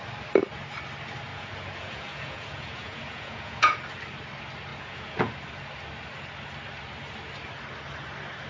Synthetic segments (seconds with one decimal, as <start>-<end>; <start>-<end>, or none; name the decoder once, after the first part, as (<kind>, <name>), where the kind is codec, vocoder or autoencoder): 1.3-3.8 (vocoder, Vocos); 4.7-5.3